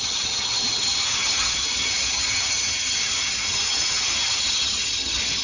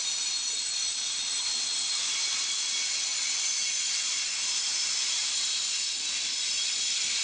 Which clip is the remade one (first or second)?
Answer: first